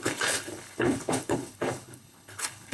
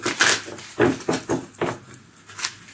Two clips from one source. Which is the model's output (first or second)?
first